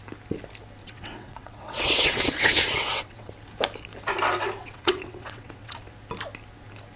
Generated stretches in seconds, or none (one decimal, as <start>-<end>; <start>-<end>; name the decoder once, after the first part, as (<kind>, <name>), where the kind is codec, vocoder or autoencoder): 0.8-3.3 (vocoder, WaveNeXt); 4.6-5.8